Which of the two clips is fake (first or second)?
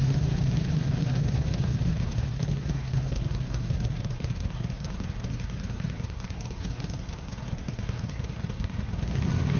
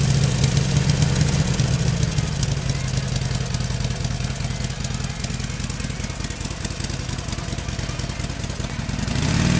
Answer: first